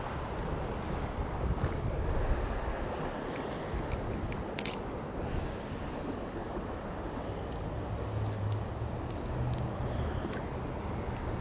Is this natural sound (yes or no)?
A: yes